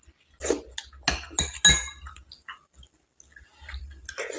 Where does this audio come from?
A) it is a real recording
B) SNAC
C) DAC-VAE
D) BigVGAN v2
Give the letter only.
A